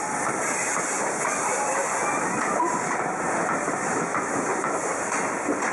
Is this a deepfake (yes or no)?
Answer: no